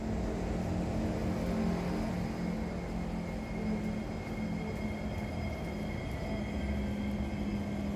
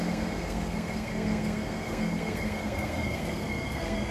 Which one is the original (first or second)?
first